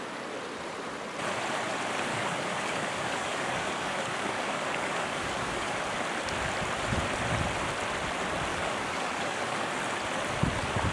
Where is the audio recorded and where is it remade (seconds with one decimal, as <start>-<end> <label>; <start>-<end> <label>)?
0.0-2.1 recorded; 2.1-5.8 remade; 5.8-8.5 recorded; 8.5-9.7 remade; 9.7-10.9 recorded